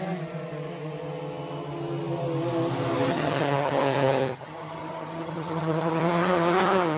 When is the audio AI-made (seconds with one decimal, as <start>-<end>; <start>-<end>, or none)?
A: 3.1-7.0